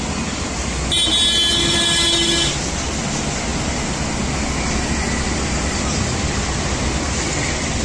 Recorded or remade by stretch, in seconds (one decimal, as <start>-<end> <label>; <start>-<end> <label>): 0.0-7.8 recorded